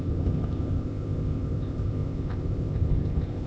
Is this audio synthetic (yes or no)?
yes